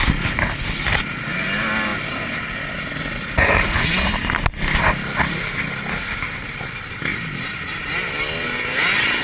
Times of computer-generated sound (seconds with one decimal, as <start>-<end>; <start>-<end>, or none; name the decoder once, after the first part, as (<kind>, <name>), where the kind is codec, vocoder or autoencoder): 6.0-6.6 (vocoder, BigVGAN v2); 7.1-7.8